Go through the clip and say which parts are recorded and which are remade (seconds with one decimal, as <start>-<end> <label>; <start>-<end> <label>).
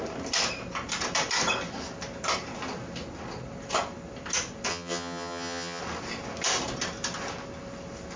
0.0-4.7 recorded; 4.7-5.8 remade; 5.8-8.2 recorded